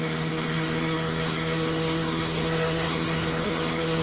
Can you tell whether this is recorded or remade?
remade